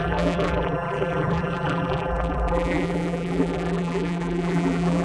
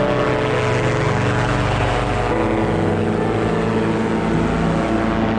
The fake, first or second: first